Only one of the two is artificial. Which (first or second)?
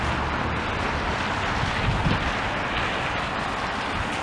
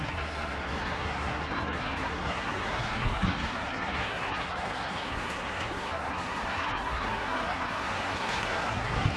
second